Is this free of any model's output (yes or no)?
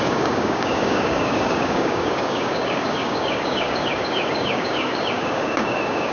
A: no